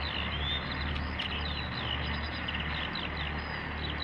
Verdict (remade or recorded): recorded